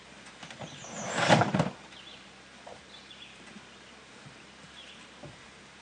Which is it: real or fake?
fake